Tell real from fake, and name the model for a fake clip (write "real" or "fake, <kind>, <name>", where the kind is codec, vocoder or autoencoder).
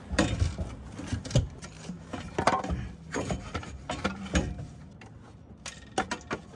real